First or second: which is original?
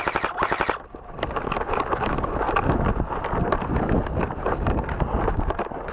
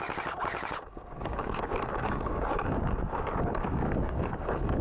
first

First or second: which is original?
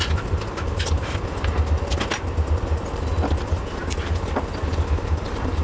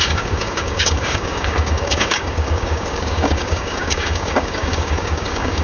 first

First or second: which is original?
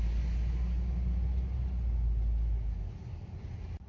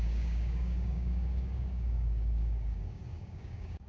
first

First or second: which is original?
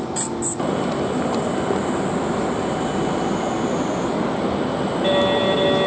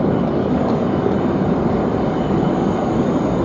first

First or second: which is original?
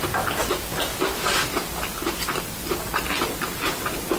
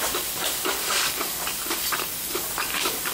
first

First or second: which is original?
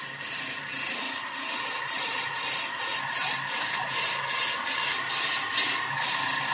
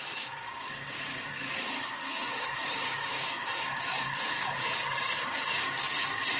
first